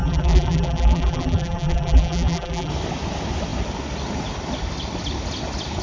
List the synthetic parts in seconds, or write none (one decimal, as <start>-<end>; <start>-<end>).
0.0-2.7